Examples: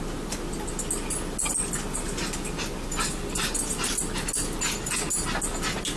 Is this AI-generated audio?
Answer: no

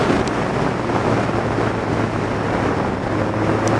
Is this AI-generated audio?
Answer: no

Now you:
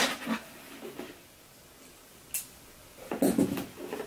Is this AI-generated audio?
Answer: no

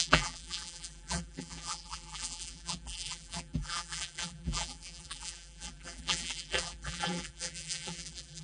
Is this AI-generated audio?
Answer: yes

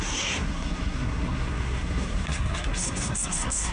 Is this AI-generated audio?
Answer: yes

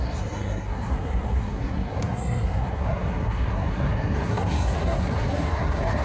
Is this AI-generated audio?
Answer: yes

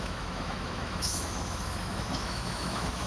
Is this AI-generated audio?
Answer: yes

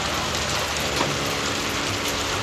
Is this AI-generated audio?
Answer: no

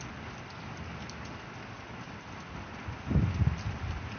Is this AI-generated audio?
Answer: no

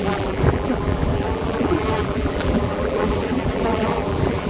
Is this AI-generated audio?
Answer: yes